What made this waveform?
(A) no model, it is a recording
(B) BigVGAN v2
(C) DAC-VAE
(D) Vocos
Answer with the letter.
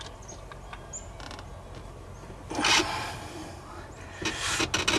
A